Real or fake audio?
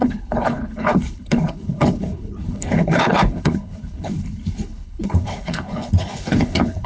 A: fake